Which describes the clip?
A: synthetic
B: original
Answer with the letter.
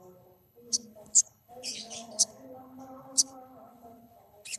A